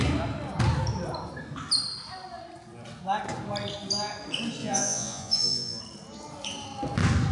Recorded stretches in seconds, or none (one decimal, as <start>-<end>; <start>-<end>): 0.0-4.6; 5.8-7.3